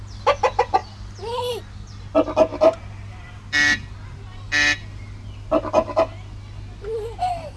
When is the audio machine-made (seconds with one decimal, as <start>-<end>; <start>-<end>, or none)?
0.8-1.5; 2.5-6.0